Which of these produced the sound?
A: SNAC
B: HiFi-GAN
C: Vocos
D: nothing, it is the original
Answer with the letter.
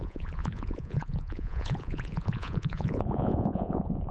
C